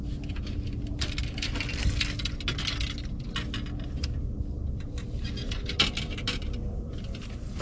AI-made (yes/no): no